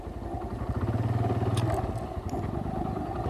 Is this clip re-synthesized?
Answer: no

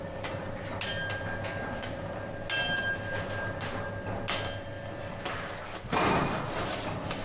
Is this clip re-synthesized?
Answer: no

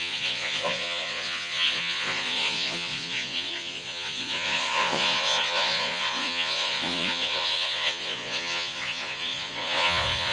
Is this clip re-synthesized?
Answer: yes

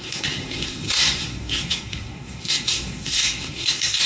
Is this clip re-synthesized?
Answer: yes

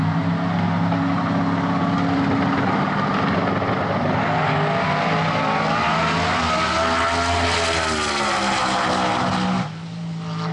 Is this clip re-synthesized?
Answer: no